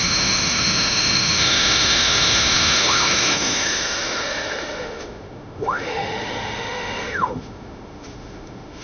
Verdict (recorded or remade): remade